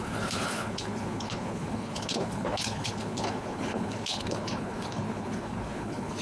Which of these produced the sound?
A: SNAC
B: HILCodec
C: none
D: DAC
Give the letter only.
B